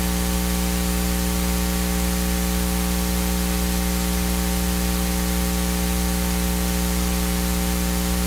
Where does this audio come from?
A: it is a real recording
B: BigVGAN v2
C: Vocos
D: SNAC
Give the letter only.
A